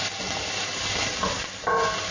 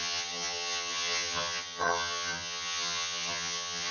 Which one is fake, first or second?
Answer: second